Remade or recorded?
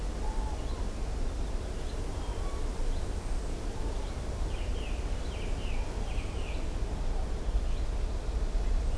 recorded